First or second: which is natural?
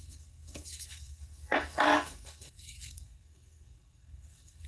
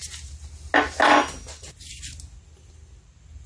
second